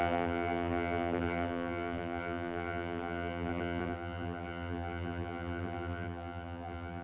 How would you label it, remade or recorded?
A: remade